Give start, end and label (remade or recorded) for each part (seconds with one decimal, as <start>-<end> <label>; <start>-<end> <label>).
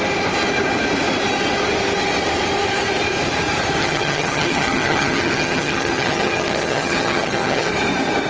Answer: 0.0-3.8 recorded; 3.8-7.7 remade; 7.7-8.3 recorded